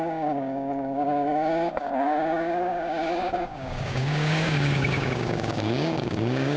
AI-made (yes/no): yes